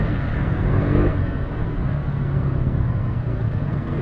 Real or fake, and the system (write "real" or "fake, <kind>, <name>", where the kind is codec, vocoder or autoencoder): fake, codec, SNAC